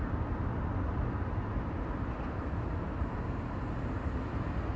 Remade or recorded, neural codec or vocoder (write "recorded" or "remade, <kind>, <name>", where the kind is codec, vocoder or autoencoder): recorded